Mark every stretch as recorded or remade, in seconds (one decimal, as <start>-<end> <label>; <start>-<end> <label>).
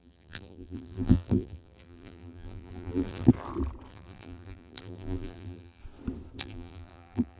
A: 0.0-3.3 remade; 3.3-3.9 recorded; 3.9-5.8 remade; 5.8-6.4 recorded; 6.4-7.4 remade